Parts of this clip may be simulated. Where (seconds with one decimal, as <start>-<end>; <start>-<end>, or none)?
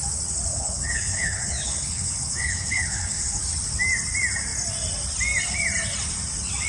0.5-3.4